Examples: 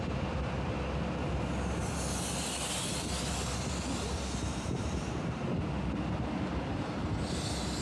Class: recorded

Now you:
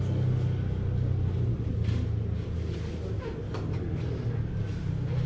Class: recorded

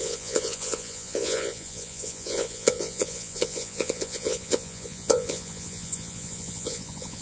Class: remade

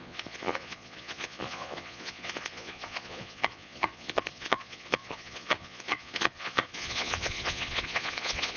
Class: remade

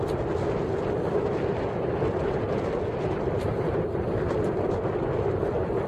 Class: recorded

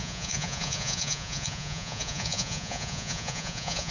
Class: remade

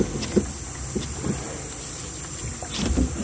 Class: recorded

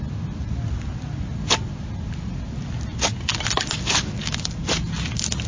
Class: recorded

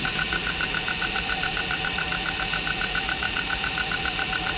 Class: remade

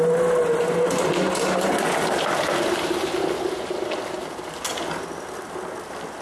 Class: recorded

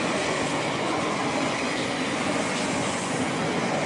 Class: remade